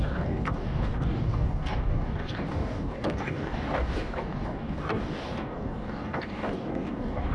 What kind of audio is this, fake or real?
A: fake